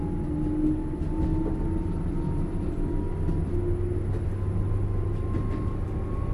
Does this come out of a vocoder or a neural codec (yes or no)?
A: no